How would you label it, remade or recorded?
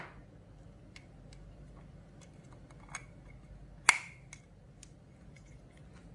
recorded